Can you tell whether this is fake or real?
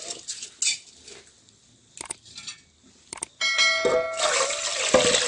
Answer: real